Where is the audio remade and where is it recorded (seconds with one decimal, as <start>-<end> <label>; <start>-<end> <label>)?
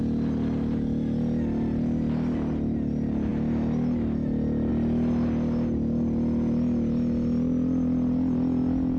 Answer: 0.0-9.0 recorded